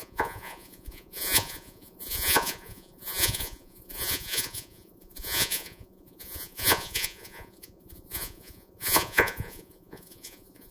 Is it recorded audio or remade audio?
remade